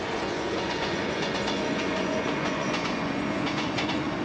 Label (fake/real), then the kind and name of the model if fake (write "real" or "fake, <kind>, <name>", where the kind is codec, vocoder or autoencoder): fake, vocoder, Vocos